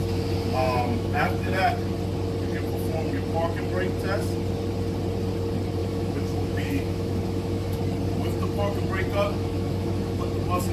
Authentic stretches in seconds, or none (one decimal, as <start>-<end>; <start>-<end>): 0.0-0.6; 1.7-5.8; 7.8-9.3; 10.2-10.7